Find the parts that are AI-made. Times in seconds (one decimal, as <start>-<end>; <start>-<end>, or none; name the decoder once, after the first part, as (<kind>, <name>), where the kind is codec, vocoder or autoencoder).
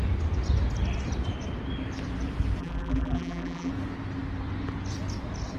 2.6-3.7 (vocoder, BigVGAN v2)